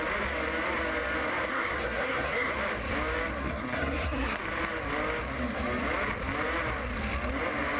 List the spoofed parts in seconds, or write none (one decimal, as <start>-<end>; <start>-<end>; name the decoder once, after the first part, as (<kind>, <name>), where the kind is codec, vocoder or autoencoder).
1.5-2.5 (codec, SNAC); 3.4-4.4